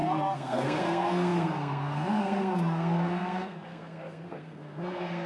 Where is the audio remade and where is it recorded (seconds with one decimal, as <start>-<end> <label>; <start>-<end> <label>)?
0.0-5.3 remade